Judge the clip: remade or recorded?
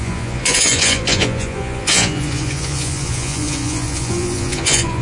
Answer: remade